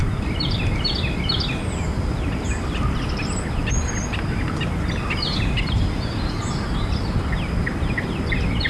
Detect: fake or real real